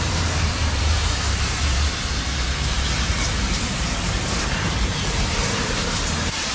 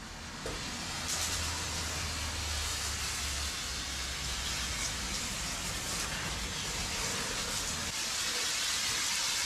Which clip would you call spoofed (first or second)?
first